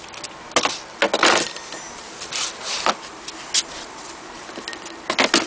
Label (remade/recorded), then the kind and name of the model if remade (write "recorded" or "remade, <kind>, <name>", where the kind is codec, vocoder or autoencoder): recorded